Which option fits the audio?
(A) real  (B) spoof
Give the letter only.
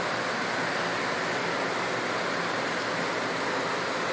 A